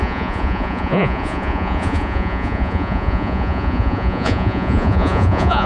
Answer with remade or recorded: remade